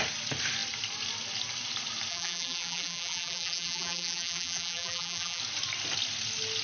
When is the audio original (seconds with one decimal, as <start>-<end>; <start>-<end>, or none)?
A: 0.0-2.1; 5.4-6.6